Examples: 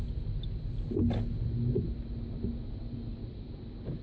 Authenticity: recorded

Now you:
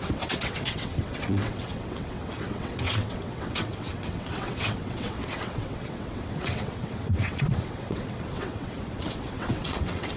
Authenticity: remade